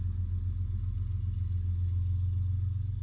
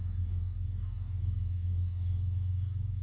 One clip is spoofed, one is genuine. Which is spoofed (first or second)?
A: second